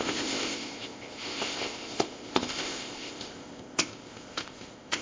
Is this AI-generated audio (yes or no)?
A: yes